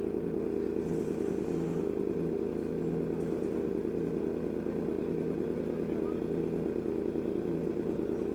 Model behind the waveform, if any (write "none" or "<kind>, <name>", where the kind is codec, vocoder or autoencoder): none